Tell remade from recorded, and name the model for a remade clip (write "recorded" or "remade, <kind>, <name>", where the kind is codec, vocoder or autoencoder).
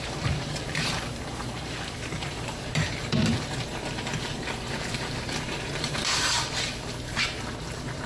remade, vocoder, BigVGAN v2